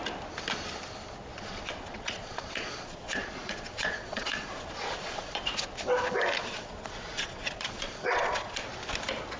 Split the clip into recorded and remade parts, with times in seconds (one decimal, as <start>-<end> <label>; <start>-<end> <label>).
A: 0.0-1.3 recorded; 1.3-5.5 remade; 5.5-6.4 recorded; 6.4-8.5 remade; 8.5-9.4 recorded